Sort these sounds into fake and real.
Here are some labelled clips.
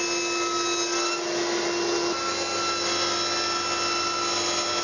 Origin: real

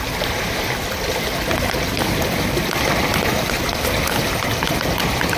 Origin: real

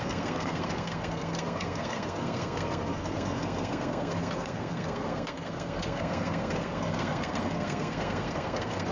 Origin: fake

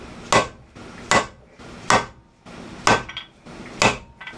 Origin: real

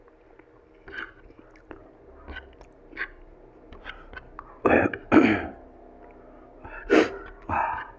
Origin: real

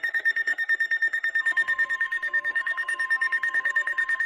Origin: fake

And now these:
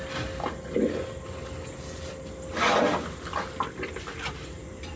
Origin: real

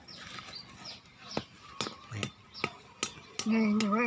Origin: real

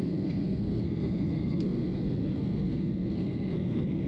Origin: fake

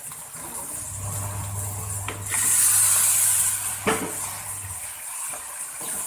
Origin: real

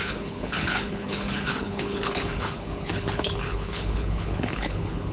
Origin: fake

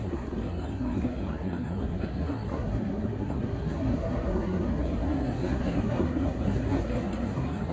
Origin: fake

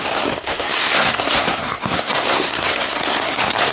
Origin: fake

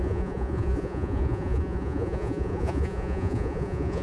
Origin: fake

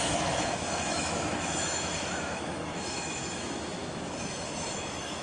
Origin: fake